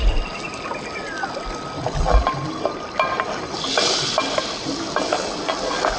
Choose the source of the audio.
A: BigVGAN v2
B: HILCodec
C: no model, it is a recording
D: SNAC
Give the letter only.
C